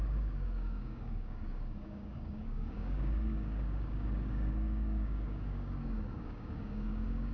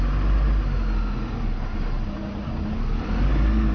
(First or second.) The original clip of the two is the second